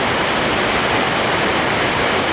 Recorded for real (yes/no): yes